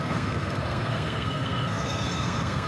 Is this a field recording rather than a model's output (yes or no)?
no